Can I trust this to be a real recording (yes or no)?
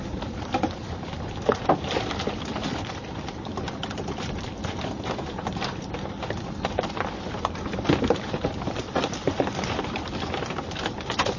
no